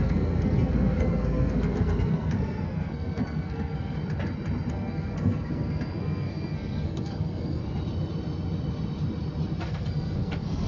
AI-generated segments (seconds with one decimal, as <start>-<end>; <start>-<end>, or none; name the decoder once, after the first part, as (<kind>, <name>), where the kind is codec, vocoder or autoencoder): 0.0-4.0 (codec, SNAC); 4.7-7.6; 9.6-10.7

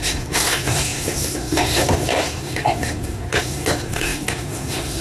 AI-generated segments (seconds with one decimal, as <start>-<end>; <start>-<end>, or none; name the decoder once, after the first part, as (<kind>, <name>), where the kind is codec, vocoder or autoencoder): 0.0-5.0 (codec, SNAC)

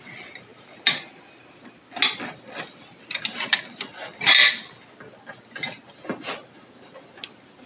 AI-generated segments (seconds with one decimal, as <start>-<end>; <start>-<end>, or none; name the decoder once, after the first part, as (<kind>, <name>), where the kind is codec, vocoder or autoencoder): none

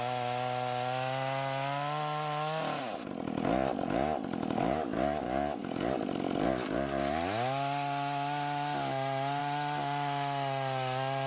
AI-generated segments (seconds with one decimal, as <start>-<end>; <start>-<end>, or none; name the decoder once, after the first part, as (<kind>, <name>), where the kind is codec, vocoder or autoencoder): none